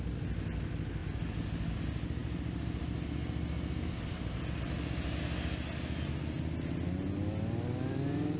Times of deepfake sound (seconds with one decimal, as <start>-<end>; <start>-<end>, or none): none